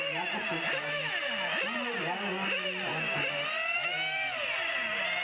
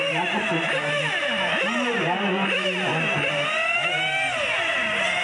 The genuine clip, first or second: first